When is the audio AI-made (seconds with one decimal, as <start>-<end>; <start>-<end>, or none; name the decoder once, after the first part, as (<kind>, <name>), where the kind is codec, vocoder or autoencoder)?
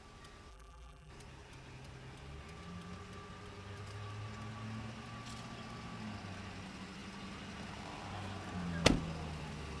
0.5-1.1 (vocoder, BigVGAN v2)